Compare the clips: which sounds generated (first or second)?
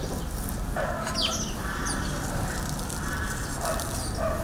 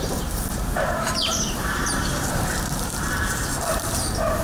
second